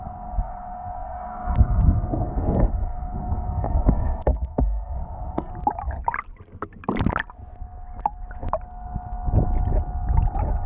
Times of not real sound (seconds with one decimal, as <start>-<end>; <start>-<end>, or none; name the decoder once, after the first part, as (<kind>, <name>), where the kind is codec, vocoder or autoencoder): 0.0-5.5 (codec, SNAC)